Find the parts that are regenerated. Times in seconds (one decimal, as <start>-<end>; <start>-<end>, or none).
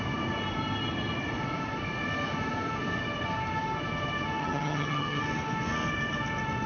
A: 4.4-5.2